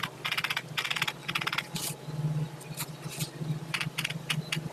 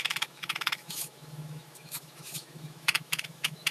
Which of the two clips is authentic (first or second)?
first